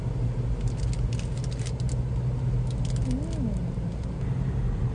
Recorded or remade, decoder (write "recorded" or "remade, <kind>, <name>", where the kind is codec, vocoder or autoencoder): recorded